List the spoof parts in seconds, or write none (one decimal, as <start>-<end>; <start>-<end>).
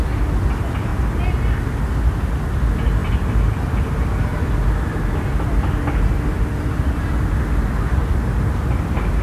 none